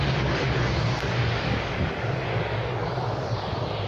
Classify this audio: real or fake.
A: fake